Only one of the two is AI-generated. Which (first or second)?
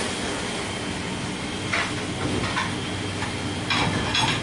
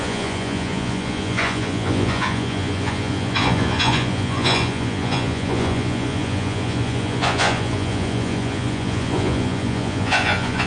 second